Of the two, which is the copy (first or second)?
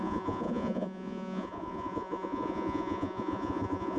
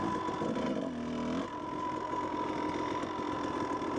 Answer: first